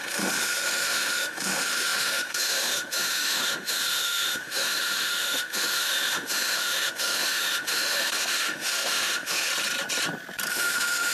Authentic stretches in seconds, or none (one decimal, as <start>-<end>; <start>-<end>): 9.5-10.5